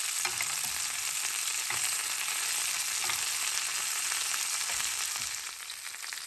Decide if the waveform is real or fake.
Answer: real